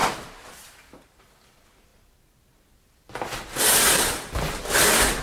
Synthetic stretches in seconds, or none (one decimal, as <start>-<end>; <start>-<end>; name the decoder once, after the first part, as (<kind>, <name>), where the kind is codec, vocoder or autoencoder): 0.0-1.2 (vocoder, BigVGAN v2)